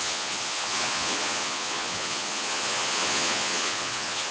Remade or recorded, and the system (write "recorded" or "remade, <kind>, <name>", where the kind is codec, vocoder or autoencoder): remade, vocoder, Vocos